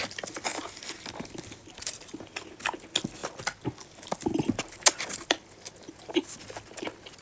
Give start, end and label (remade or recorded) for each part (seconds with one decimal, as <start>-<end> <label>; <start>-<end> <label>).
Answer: 0.0-7.2 recorded